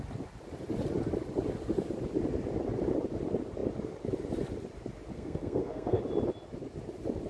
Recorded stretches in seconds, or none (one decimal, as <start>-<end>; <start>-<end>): 0.0-5.1; 6.0-7.3